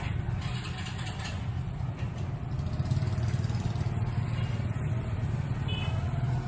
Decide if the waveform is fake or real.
real